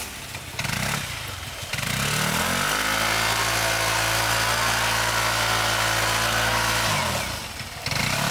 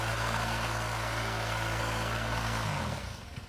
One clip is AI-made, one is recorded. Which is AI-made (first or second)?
second